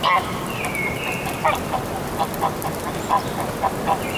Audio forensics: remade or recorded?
recorded